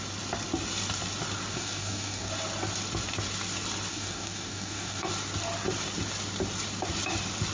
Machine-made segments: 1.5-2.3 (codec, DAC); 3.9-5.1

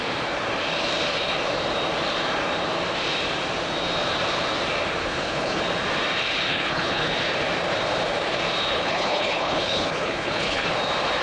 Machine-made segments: 5.0-5.6 (codec, HILCodec); 6.5-7.1; 8.7-10.7